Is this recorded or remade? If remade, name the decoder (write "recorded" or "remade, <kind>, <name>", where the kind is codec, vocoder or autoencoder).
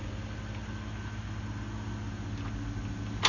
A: recorded